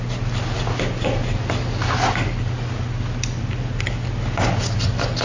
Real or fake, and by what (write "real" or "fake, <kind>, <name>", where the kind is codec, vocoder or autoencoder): real